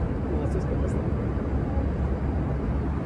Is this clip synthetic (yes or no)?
no